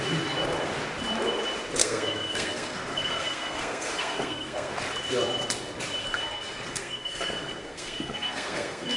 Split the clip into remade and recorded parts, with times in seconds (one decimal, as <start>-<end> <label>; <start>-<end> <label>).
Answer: 0.0-1.8 recorded; 1.8-4.7 remade; 4.7-6.0 recorded; 6.0-9.0 remade